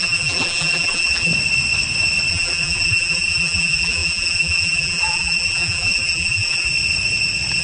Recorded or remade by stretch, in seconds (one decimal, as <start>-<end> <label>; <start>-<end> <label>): 0.0-1.3 remade; 1.3-2.3 recorded; 2.3-6.7 remade; 6.7-7.6 recorded